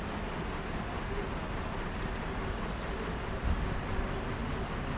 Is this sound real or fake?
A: real